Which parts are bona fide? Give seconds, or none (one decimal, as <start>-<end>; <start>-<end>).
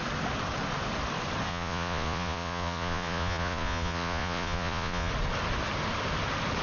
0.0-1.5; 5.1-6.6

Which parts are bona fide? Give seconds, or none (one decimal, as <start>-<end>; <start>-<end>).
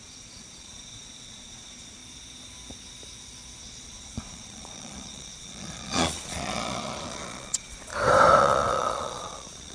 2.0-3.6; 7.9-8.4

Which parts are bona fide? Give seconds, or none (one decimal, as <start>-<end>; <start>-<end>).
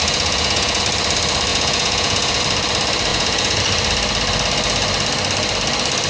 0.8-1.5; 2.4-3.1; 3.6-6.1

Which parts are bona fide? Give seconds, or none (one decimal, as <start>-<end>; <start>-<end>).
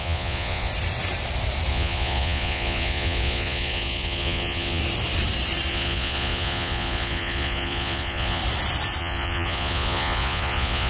0.7-1.7; 4.8-5.7; 8.4-9.0